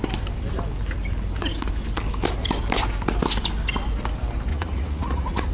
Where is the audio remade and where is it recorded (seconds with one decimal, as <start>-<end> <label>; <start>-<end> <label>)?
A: 0.0-4.5 recorded; 4.5-5.5 remade